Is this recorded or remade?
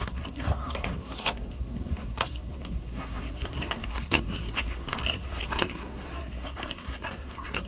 remade